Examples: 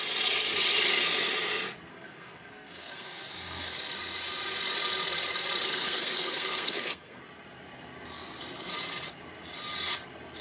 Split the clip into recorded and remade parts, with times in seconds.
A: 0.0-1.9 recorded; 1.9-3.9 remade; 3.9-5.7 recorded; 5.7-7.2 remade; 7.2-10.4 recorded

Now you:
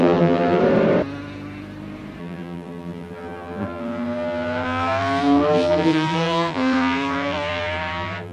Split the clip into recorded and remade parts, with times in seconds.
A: 0.0-0.6 remade; 0.6-2.2 recorded; 2.2-8.3 remade